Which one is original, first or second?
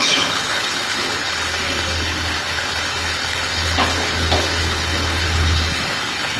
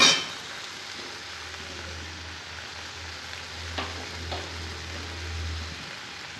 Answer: second